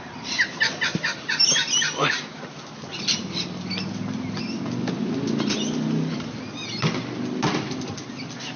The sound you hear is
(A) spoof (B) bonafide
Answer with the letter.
B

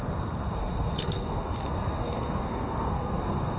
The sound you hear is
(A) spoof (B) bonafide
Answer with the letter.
A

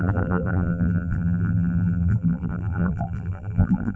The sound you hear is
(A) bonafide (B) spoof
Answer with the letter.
B